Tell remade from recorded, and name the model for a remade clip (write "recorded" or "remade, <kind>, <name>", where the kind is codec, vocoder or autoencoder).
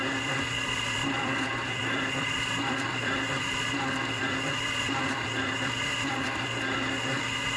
remade, vocoder, BigVGAN v2